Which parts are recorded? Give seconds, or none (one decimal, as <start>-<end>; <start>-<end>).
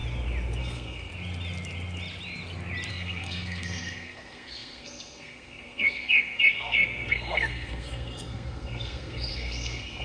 0.0-0.6; 1.1-2.9